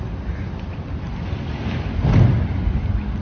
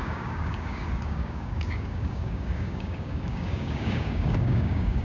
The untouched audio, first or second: first